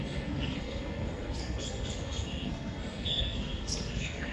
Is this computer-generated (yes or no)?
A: yes